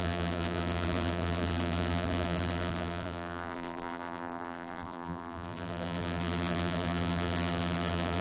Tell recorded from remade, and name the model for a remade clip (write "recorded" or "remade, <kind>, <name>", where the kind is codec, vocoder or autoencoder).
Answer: remade, vocoder, BigVGAN v2